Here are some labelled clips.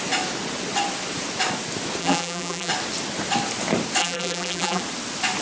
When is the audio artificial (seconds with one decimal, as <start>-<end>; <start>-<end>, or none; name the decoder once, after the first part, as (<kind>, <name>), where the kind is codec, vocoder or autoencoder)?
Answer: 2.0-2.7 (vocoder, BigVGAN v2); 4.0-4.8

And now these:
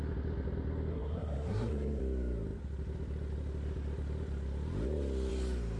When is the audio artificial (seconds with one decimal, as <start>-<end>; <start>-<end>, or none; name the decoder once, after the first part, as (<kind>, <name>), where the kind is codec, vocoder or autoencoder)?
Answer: 0.9-2.0 (codec, SNAC)

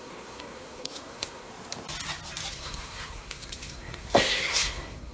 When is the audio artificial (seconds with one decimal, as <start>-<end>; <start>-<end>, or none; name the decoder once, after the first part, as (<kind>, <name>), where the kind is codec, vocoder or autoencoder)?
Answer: 0.0-1.5 (codec, SNAC); 2.5-5.1

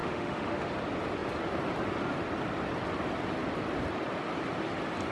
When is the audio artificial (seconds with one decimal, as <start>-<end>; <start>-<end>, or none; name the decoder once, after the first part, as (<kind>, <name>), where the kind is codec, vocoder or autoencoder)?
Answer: 0.0-0.7 (autoencoder, DAC-VAE)